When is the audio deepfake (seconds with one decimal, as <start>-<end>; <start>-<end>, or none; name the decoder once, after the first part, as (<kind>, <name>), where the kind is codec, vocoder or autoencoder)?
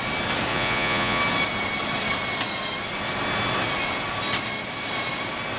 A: 0.5-1.2 (vocoder, Vocos)